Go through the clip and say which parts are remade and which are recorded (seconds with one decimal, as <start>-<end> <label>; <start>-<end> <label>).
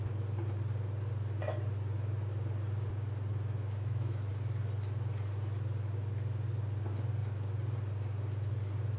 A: 0.0-3.3 recorded; 3.3-4.3 remade; 4.3-9.0 recorded